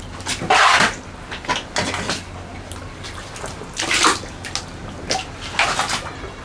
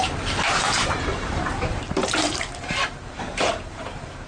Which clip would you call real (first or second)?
first